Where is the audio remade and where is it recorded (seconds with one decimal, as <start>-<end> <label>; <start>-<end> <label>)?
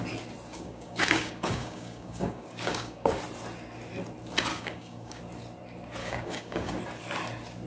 0.0-0.5 recorded; 0.5-3.2 remade; 3.2-4.5 recorded; 4.5-5.2 remade; 5.2-6.0 recorded; 6.0-6.7 remade; 6.7-7.7 recorded